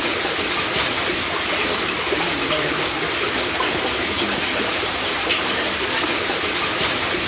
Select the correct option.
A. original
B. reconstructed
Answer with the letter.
A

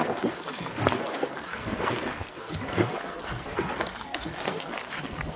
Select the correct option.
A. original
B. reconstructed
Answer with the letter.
B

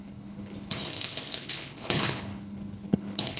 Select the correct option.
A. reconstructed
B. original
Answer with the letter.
A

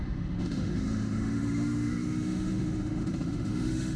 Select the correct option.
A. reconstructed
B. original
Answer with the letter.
A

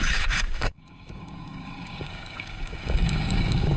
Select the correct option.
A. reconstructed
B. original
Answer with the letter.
A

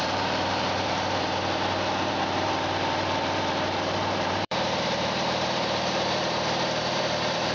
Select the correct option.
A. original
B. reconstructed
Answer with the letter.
B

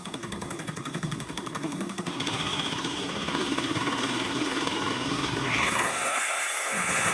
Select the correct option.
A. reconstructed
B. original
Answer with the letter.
A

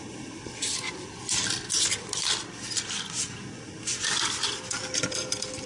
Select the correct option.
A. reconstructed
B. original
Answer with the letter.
B